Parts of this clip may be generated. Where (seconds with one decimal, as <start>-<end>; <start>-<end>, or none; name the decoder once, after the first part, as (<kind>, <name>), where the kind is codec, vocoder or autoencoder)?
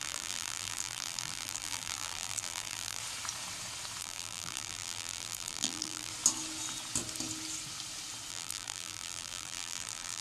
0.0-3.0 (vocoder, BigVGAN v2); 4.0-6.1; 8.3-10.2